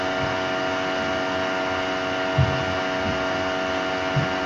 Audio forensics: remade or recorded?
recorded